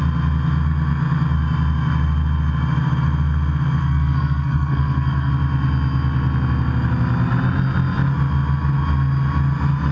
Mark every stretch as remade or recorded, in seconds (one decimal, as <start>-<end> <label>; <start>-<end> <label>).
0.0-3.8 recorded; 3.8-5.3 remade; 5.3-9.9 recorded